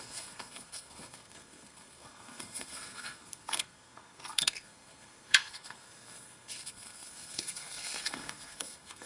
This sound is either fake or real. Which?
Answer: fake